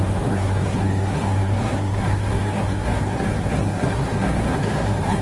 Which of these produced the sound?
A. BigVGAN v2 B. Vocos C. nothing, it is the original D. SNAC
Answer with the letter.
D